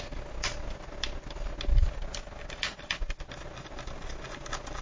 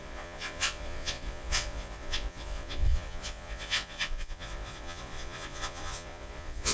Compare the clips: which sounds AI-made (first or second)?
second